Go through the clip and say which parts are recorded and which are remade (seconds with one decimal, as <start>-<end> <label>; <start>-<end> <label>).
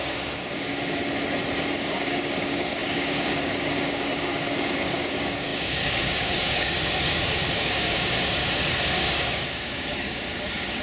0.0-0.7 remade; 0.7-1.7 recorded; 1.7-10.8 remade